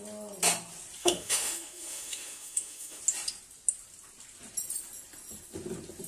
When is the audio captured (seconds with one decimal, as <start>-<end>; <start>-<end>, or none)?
0.0-1.0; 3.0-6.1